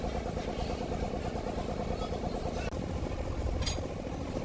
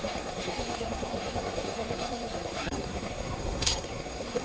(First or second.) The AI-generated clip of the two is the second